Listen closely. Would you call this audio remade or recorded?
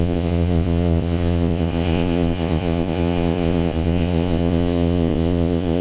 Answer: remade